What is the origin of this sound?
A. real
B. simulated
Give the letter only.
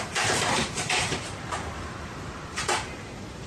B